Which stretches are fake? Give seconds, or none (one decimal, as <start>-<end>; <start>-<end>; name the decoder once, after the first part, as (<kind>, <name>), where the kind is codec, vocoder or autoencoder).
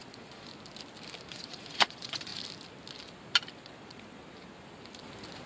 0.0-0.5 (vocoder, Vocos); 1.3-2.3; 3.5-4.2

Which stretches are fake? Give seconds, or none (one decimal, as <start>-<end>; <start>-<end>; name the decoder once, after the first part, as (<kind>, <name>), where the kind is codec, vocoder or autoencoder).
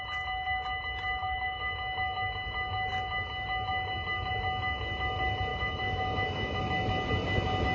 1.2-1.7 (autoencoder, DAC-VAE); 5.5-6.6